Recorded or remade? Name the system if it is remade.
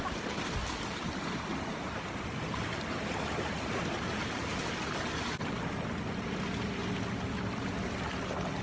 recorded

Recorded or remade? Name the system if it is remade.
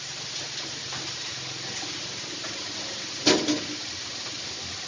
recorded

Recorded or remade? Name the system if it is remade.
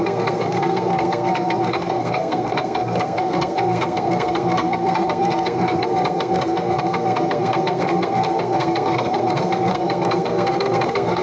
remade, codec, SNAC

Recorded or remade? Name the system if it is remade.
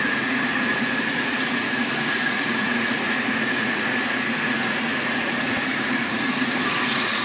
remade, vocoder, Vocos